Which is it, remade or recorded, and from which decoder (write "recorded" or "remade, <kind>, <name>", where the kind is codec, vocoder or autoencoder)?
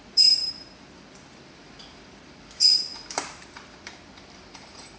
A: remade, vocoder, BigVGAN v2